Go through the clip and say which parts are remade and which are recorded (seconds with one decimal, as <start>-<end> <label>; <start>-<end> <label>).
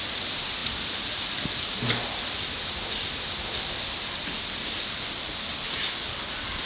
0.0-6.7 recorded